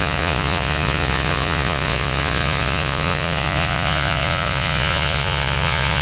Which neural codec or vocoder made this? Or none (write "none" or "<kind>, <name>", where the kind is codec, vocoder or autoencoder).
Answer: vocoder, Vocos